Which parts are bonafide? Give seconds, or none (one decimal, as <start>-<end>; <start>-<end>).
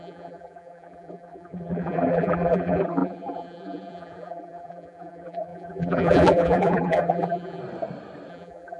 7.6-8.3